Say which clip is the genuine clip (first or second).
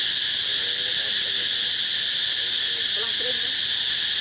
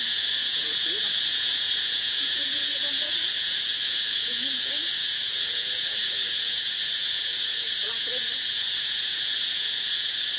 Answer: first